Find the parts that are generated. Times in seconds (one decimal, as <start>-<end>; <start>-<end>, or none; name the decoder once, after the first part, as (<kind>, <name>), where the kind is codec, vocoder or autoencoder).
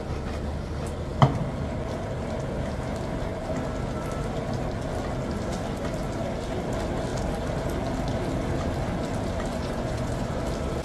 9.5-10.4 (vocoder, Vocos)